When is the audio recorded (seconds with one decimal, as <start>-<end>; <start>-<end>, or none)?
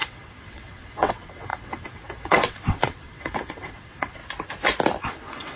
4.2-5.0